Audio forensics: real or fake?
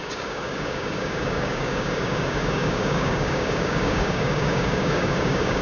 fake